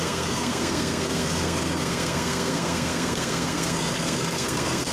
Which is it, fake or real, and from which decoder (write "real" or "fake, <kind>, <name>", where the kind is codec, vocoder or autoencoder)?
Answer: fake, codec, SNAC